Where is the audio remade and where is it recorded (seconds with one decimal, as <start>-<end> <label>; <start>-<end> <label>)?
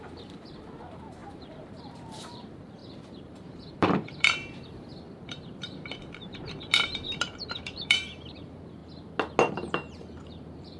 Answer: 0.0-8.8 remade; 8.8-9.5 recorded; 9.5-10.8 remade